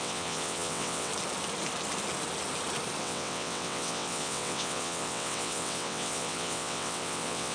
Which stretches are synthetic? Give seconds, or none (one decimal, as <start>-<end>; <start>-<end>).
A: 0.0-1.1; 3.0-7.5